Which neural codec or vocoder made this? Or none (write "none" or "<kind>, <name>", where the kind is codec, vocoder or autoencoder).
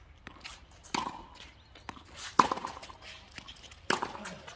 none